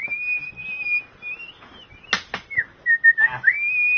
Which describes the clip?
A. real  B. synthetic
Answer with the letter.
A